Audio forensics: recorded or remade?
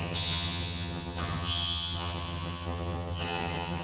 remade